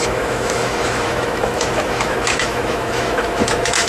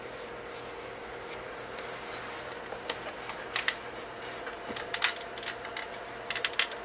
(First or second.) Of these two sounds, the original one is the second